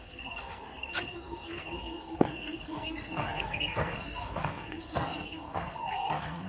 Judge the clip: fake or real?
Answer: fake